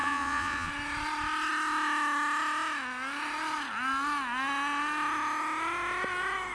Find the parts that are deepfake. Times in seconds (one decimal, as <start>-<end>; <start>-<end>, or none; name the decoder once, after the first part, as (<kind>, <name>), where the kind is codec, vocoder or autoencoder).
0.0-0.7 (vocoder, Vocos)